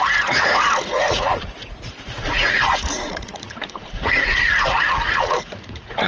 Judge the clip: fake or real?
fake